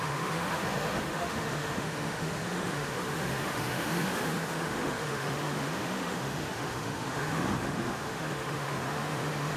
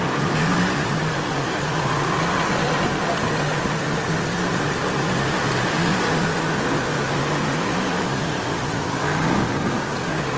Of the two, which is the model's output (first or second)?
first